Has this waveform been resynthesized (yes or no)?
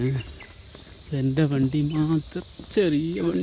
no